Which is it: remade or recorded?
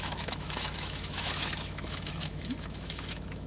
remade